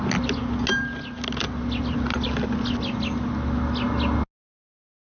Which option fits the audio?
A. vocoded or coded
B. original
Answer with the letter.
B